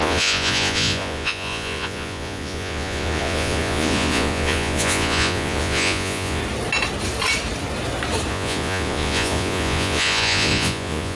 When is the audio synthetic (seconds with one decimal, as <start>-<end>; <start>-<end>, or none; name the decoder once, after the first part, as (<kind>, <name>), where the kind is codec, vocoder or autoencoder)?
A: 0.0-6.4 (vocoder, Vocos); 8.3-11.1